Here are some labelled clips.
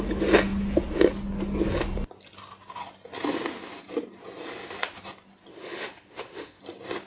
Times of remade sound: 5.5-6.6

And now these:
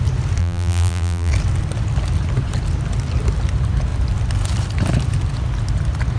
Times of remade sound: 0.4-1.3

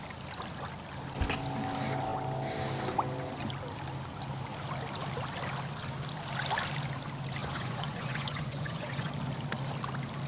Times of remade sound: 7.4-9.1

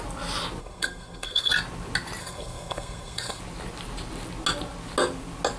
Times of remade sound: 0.6-1.5; 2.2-3.4

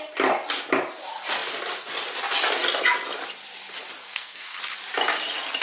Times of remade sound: 4.0-4.6

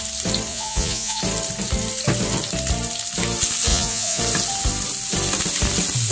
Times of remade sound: 0.5-1.2; 3.7-4.2